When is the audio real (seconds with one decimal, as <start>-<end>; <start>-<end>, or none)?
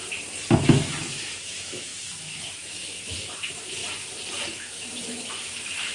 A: 0.0-0.6; 3.8-4.5